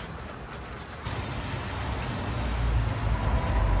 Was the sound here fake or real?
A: real